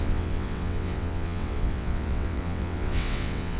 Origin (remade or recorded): remade